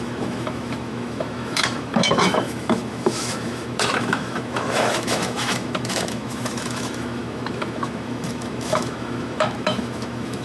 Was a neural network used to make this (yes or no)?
yes